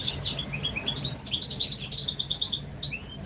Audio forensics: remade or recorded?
recorded